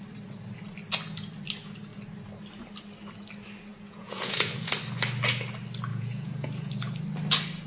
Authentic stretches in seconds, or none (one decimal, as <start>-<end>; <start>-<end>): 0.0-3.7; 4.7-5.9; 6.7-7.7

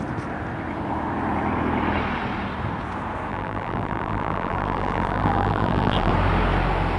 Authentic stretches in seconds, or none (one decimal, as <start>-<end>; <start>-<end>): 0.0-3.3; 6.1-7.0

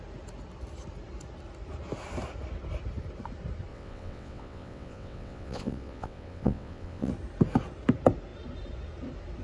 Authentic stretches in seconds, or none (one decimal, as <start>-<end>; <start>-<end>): 0.0-3.7; 7.1-9.4

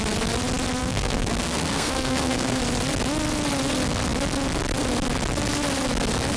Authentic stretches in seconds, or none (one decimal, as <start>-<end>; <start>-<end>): 0.0-0.8; 2.6-6.4